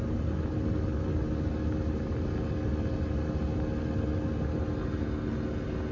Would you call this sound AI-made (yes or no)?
no